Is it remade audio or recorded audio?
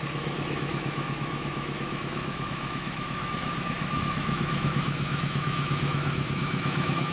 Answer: remade